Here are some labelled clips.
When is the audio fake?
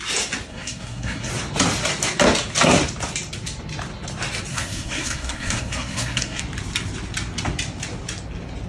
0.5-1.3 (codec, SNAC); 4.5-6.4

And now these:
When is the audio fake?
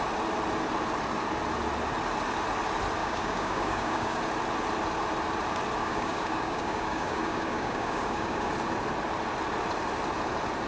3.0-4.2 (codec, DAC); 5.8-8.5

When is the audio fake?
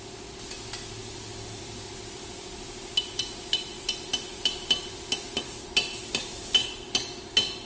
1.0-1.9 (vocoder, BigVGAN v2)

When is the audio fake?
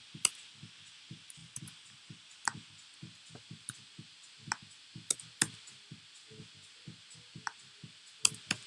1.4-2.2 (vocoder, BigVGAN v2)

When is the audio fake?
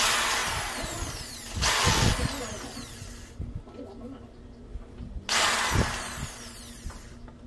none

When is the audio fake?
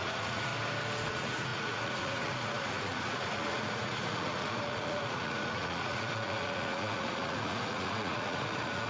0.0-0.5 (vocoder, Vocos); 1.1-8.9